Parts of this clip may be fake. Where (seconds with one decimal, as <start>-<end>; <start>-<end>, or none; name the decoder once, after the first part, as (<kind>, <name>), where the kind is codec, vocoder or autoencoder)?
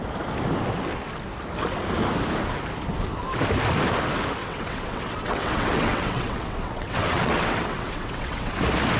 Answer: 4.4-8.5 (vocoder, WaveNeXt)